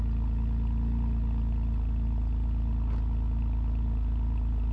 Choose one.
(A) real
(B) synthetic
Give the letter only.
A